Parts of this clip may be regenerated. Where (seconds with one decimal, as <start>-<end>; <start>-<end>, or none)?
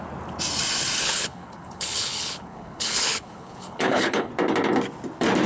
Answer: 1.0-4.3